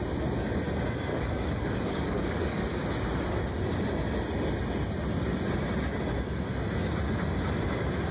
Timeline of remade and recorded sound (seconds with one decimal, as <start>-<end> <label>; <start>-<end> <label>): 0.0-1.1 recorded; 1.1-2.6 remade; 2.6-8.1 recorded